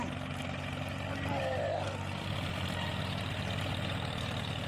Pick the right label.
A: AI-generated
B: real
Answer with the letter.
B